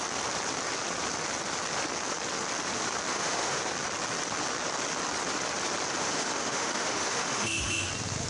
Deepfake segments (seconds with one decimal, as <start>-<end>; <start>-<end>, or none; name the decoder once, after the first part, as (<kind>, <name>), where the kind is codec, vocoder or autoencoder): 3.1-3.6 (autoencoder, DAC-VAE); 6.0-7.9